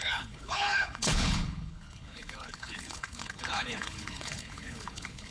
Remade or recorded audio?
remade